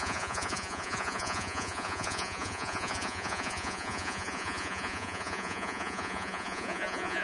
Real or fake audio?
fake